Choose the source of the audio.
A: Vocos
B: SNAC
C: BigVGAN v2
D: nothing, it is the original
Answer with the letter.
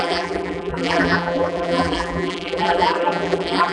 C